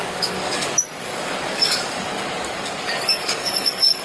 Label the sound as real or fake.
fake